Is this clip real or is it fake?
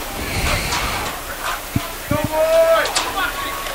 real